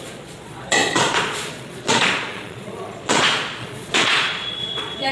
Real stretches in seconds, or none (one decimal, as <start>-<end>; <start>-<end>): none